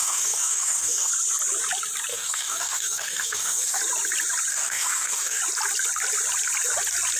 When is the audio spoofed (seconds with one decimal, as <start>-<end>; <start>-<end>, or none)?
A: 0.0-1.1; 2.1-3.8; 4.5-5.4